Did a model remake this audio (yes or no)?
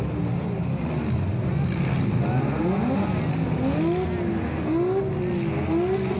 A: no